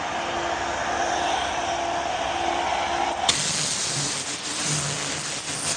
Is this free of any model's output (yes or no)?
yes